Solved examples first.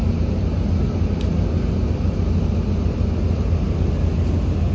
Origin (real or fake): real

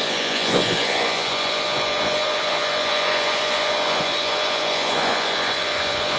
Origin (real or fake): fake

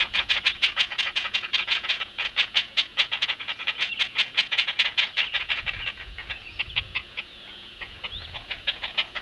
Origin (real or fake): fake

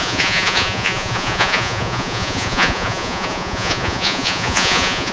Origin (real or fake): fake